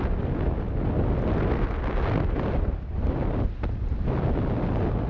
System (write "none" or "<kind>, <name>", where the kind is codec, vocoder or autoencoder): none